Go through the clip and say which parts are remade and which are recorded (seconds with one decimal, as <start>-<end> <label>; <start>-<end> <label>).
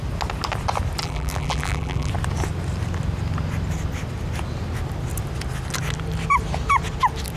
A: 0.0-1.0 recorded; 1.0-2.1 remade; 2.1-7.4 recorded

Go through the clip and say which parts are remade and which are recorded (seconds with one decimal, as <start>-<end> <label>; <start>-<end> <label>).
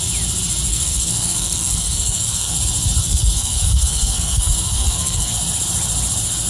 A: 0.0-0.7 recorded; 0.7-2.6 remade; 2.6-3.0 recorded; 3.0-5.3 remade; 5.3-6.5 recorded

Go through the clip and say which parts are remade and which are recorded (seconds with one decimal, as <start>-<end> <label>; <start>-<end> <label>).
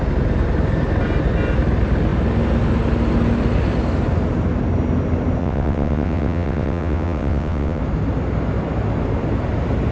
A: 0.0-5.4 recorded; 5.4-7.8 remade; 7.8-9.9 recorded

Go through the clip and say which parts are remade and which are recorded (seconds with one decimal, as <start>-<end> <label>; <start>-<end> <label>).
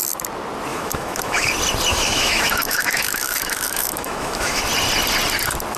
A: 0.0-0.7 recorded; 0.7-1.5 remade; 1.5-1.9 recorded; 1.9-4.6 remade; 4.6-5.8 recorded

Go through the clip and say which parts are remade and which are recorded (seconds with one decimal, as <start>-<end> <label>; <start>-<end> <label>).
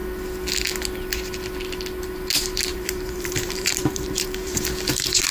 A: 0.0-2.7 recorded; 2.7-4.6 remade; 4.6-5.3 recorded